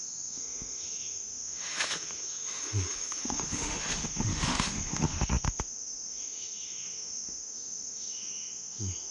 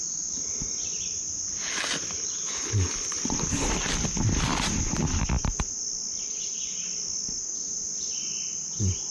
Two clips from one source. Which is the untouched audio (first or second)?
second